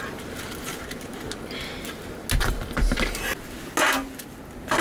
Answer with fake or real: real